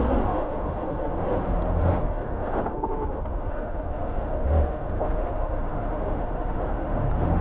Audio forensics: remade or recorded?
remade